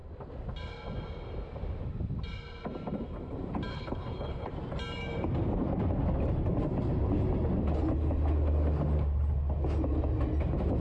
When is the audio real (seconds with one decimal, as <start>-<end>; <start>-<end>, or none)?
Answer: 0.0-3.7; 4.5-10.8